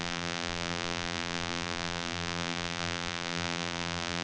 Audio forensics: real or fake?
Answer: fake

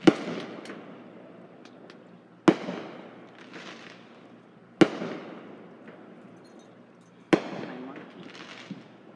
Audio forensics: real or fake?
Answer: real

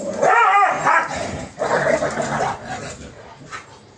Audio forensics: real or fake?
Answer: real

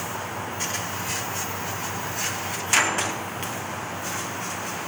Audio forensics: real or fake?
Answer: real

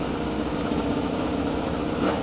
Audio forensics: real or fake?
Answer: real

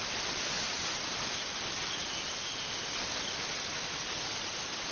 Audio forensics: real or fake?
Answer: real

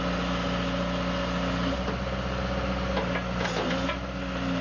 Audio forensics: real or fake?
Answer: real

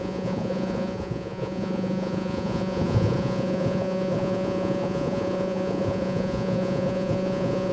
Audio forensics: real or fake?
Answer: fake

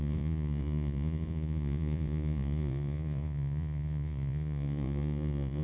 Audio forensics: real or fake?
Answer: fake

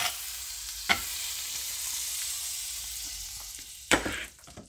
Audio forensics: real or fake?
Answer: fake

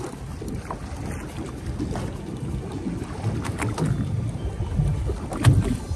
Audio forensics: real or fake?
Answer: real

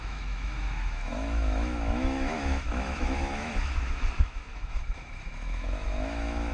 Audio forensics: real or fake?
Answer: fake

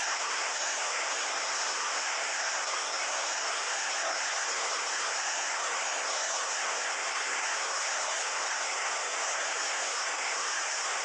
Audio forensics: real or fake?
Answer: fake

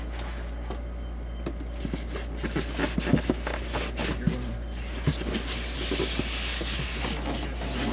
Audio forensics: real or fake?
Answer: real